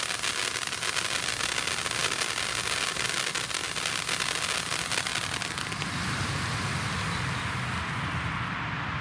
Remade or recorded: recorded